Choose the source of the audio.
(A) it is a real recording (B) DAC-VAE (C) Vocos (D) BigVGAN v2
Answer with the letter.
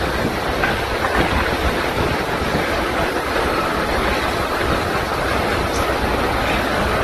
A